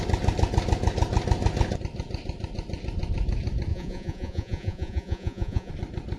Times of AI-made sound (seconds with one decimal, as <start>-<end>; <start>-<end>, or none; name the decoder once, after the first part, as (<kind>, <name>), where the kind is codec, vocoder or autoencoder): 3.7-5.7 (vocoder, Vocos)